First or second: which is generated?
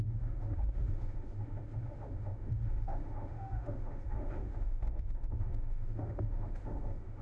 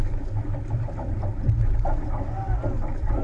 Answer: first